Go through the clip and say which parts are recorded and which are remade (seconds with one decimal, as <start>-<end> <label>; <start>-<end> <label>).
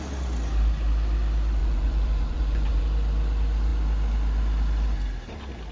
0.0-1.6 recorded; 1.6-2.8 remade; 2.8-5.7 recorded